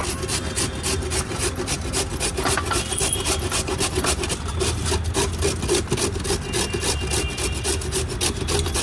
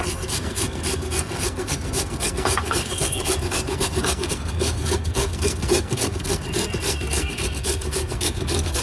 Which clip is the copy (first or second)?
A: second